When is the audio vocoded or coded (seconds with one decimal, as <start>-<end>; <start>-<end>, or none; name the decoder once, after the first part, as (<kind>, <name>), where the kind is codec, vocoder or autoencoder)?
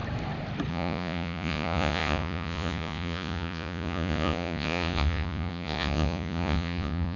0.7-7.2 (vocoder, Vocos)